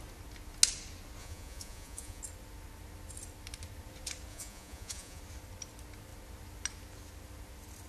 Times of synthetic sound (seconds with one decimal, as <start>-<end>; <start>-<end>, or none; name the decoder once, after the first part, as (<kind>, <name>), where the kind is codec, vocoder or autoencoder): 1.2-2.2 (vocoder, Vocos); 4.3-5.2